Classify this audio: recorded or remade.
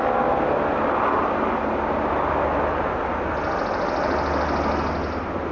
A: recorded